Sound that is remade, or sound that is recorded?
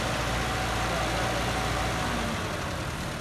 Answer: recorded